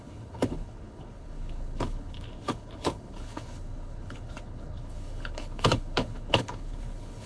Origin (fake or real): fake